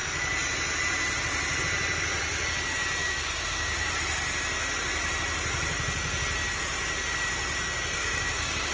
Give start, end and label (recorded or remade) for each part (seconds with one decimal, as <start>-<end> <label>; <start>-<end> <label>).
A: 0.0-3.0 recorded; 3.0-3.9 remade; 3.9-8.0 recorded; 8.0-8.7 remade